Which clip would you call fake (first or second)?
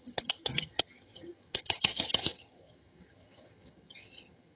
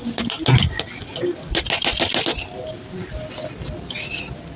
first